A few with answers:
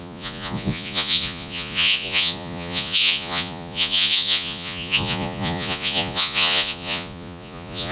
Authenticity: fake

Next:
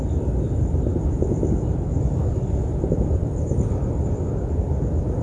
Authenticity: real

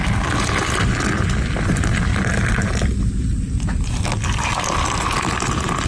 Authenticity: real